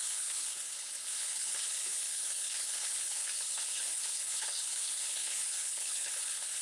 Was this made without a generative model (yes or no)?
no